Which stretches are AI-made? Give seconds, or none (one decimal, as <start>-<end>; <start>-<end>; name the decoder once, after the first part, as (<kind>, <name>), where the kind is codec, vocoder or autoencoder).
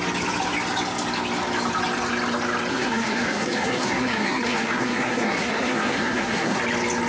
2.7-6.6 (codec, SNAC)